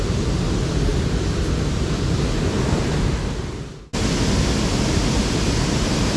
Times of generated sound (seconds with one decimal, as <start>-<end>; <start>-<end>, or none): none